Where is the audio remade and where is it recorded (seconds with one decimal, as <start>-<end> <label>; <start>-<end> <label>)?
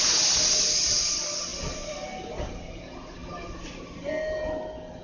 0.0-5.0 recorded